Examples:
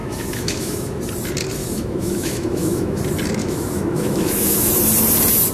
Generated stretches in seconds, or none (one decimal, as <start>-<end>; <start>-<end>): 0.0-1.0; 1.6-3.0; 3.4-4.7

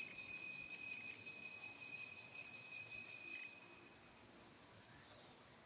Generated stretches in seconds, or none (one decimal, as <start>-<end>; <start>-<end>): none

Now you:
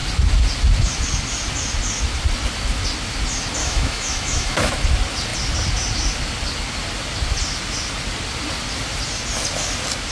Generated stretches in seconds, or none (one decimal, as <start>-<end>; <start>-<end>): 3.6-4.7